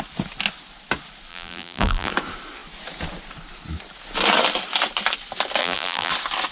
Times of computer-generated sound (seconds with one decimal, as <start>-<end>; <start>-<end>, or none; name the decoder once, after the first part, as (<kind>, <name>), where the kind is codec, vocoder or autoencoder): 1.3-2.1 (vocoder, BigVGAN v2); 5.6-6.1